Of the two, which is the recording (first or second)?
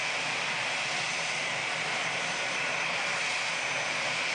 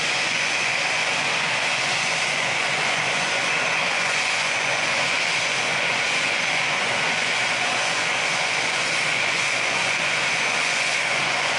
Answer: first